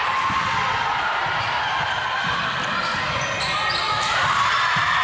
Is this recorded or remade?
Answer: recorded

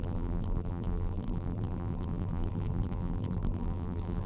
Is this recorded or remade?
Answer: remade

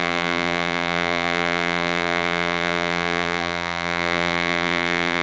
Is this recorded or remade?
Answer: remade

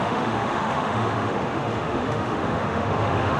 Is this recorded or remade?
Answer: remade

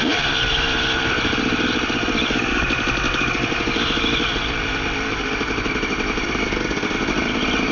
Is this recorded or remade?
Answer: remade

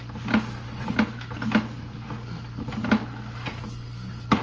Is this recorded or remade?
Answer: recorded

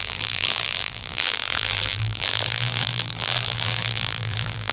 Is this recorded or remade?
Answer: remade